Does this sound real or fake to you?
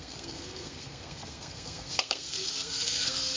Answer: fake